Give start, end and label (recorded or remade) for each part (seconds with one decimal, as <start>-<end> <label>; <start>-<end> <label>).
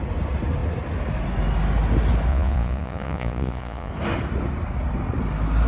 0.0-2.3 recorded; 2.3-3.9 remade; 3.9-5.7 recorded